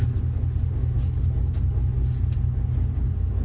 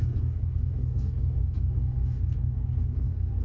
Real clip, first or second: first